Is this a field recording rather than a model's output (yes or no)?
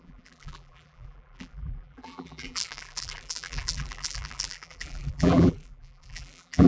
no